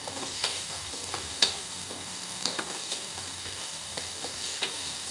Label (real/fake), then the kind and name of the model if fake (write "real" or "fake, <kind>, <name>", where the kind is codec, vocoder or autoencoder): fake, codec, DAC